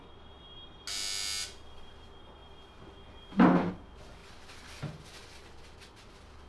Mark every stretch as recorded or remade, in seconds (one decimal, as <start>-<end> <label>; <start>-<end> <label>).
0.0-6.5 recorded